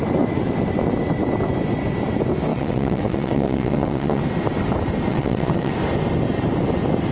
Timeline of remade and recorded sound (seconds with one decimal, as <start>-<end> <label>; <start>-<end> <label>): 0.0-2.5 recorded; 2.5-4.2 remade; 4.2-5.1 recorded; 5.1-5.7 remade; 5.7-7.1 recorded